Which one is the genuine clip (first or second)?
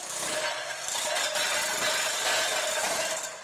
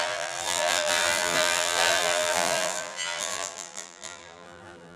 first